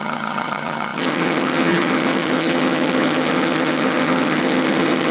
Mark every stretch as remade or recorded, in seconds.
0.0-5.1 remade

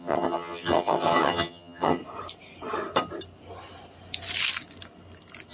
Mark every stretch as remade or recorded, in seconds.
0.0-2.0 remade; 2.0-5.5 recorded

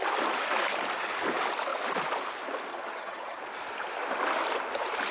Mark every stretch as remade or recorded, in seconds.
0.0-2.7 recorded; 2.7-3.4 remade; 3.4-5.1 recorded

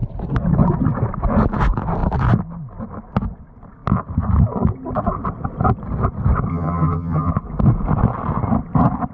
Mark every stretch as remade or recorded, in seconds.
0.0-6.5 recorded; 6.5-7.3 remade; 7.3-9.1 recorded

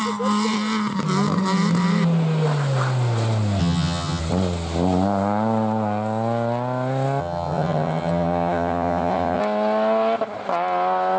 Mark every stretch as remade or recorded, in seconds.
0.0-3.6 recorded; 3.6-4.2 remade; 4.2-7.2 recorded; 7.2-9.4 remade; 9.4-11.2 recorded

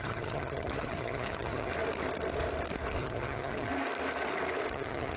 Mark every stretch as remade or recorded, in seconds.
0.0-1.7 remade; 1.7-3.0 recorded; 3.0-3.7 remade; 3.7-4.7 recorded; 4.7-5.2 remade